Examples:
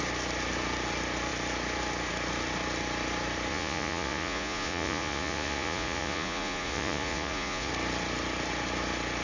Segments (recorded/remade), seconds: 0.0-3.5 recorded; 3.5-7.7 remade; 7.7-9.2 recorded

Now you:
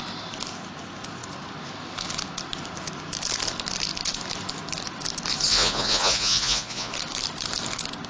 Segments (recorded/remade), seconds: 0.0-5.5 recorded; 5.5-6.9 remade; 6.9-8.1 recorded

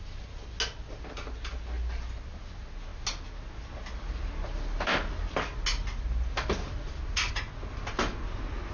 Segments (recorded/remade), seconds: 0.0-8.7 recorded

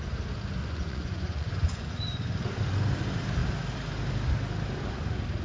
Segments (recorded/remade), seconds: 0.0-0.6 recorded; 0.6-1.9 remade; 1.9-5.4 recorded